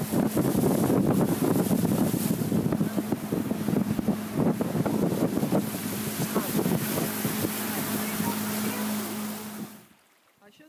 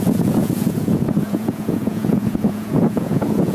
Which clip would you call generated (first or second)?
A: second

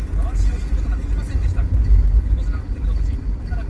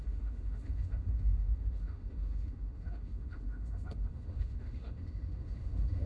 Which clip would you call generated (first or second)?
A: second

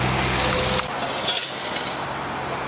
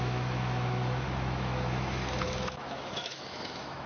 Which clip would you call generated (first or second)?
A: second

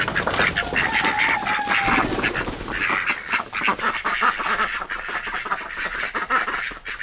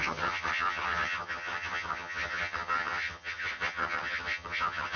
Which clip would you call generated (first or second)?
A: second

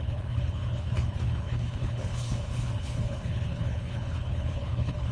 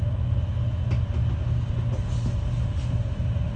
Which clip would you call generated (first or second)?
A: first